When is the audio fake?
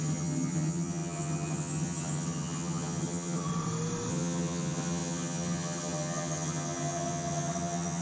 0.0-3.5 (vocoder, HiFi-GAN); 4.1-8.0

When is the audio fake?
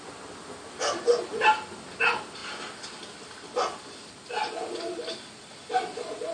none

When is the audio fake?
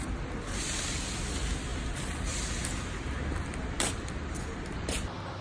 none